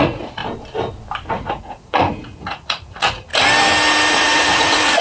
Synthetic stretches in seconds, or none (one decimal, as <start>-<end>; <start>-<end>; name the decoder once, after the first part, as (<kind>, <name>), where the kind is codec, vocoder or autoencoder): 0.0-0.4 (vocoder, Vocos); 1.3-3.3; 4.1-5.0